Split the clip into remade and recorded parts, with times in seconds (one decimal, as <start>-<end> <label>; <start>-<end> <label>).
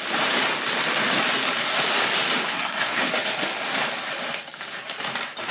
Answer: 0.0-2.5 recorded; 2.5-3.1 remade; 3.1-5.5 recorded